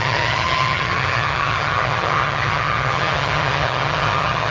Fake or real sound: fake